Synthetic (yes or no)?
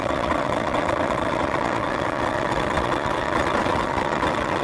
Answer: yes